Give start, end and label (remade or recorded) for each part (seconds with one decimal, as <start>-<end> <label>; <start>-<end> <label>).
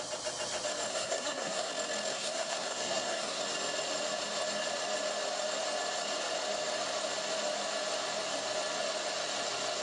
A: 0.0-0.9 recorded; 0.9-1.7 remade; 1.7-2.1 recorded; 2.1-3.4 remade; 3.4-9.8 recorded